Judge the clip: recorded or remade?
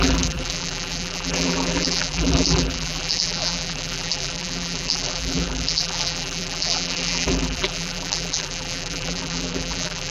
remade